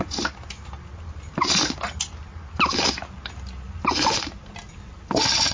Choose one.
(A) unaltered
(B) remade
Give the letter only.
A